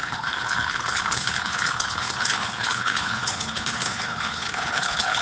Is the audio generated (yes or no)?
yes